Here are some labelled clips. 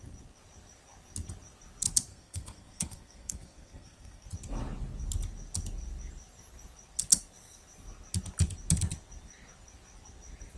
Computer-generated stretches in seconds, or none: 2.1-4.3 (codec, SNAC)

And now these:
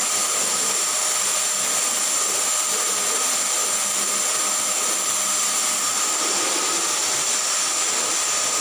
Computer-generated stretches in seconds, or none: none